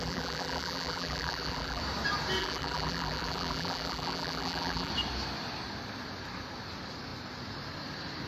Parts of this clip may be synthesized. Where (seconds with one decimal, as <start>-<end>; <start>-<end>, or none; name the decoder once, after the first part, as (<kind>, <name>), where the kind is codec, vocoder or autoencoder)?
0.0-1.8 (vocoder, BigVGAN v2); 2.4-4.9